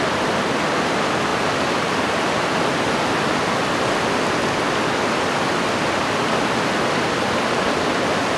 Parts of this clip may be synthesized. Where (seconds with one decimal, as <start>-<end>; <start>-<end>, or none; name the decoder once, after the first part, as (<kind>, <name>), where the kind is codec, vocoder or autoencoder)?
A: none